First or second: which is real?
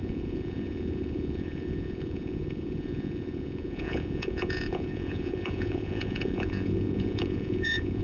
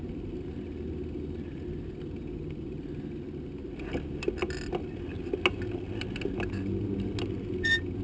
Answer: second